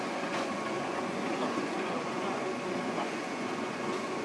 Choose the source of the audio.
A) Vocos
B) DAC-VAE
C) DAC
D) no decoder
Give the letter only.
A